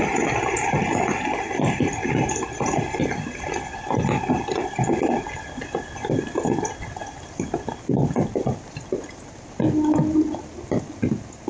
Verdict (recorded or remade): recorded